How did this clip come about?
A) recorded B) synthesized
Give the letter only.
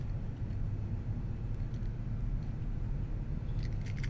A